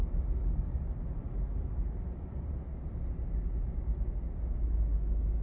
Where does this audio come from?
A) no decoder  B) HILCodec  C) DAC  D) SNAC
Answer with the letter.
A